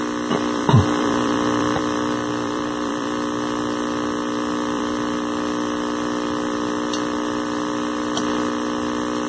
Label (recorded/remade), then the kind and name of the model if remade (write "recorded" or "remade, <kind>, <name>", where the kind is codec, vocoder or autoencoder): remade, vocoder, BigVGAN v2